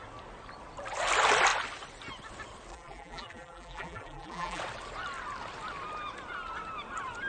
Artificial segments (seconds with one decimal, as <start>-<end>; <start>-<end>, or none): 2.7-4.6